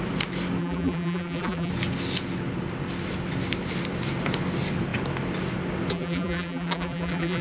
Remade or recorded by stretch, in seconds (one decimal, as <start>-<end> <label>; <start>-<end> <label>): 0.0-0.6 recorded; 0.6-1.7 remade; 1.7-5.9 recorded; 5.9-7.4 remade